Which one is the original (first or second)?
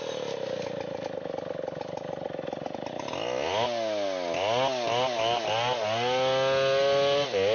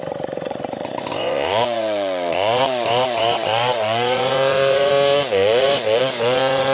first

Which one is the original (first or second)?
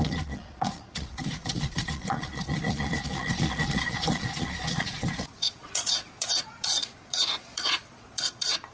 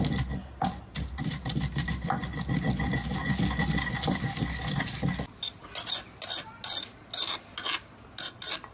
second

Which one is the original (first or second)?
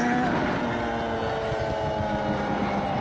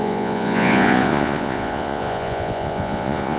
first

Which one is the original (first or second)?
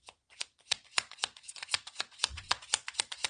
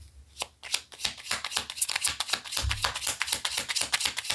second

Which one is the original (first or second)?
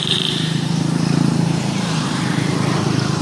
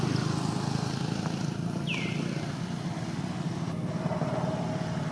second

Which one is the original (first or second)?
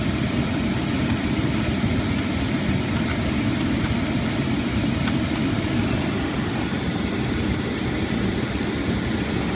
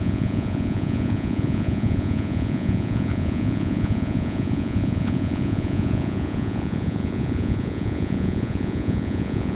first